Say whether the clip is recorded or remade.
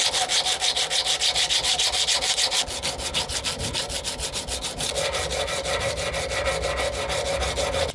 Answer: recorded